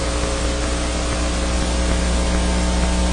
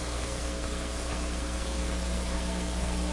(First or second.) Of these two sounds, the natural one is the first